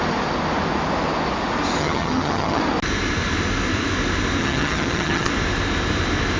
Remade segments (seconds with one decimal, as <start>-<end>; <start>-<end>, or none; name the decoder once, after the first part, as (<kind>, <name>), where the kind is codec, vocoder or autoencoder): 1.8-2.6 (vocoder, HiFi-GAN); 4.4-5.3